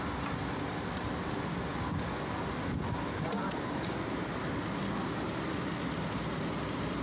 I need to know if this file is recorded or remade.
recorded